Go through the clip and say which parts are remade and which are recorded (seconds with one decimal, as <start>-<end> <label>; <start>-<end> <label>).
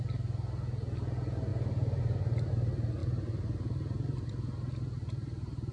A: 0.0-3.0 recorded; 3.0-4.3 remade; 4.3-5.0 recorded; 5.0-5.7 remade